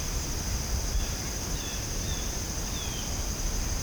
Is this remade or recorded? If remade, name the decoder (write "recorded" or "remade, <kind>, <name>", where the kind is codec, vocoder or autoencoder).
remade, vocoder, BigVGAN v2